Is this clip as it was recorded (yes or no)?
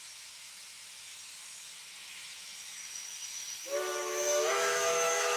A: no